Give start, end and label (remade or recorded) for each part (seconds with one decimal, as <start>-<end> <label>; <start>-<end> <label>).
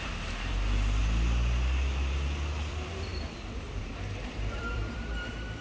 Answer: 0.0-1.0 remade; 1.0-2.7 recorded; 2.7-5.6 remade